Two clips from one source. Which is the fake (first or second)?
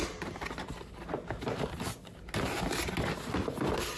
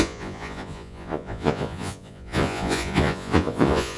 second